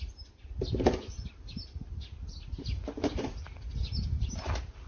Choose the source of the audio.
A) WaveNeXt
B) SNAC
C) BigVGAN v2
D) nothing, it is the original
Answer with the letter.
D